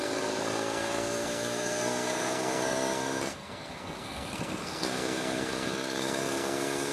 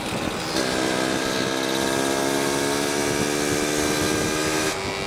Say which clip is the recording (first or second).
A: second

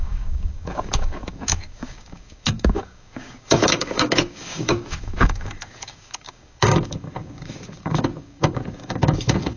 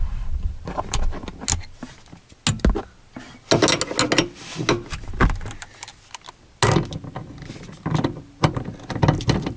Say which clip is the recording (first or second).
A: second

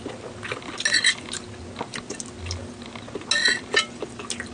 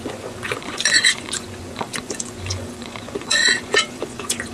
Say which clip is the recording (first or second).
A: first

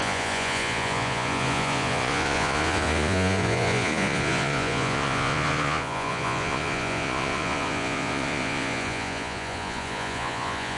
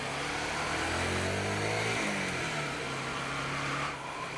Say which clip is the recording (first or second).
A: second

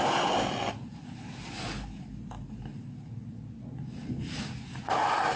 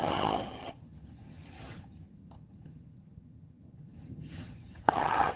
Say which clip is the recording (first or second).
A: first